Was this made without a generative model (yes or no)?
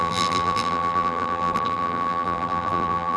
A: no